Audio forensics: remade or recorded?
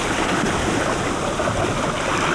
recorded